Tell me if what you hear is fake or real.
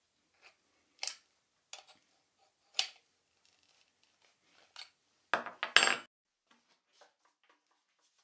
real